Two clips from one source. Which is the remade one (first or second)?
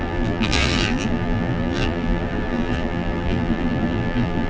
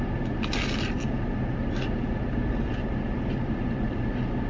first